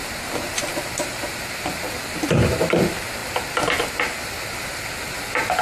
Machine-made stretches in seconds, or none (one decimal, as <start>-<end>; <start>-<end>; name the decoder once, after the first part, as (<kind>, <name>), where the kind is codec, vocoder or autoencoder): none